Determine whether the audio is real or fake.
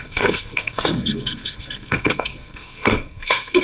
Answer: fake